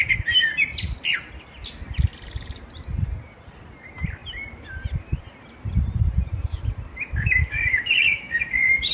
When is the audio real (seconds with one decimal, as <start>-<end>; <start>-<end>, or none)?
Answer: 0.0-6.9